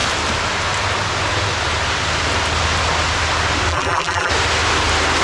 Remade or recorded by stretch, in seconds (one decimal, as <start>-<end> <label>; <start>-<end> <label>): 0.0-3.7 recorded; 3.7-4.3 remade; 4.3-5.2 recorded